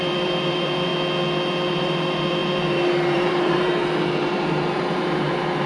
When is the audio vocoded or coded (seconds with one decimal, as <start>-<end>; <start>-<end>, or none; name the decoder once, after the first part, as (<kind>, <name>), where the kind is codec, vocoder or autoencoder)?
0.0-0.9 (vocoder, BigVGAN v2); 1.7-3.7; 4.2-5.7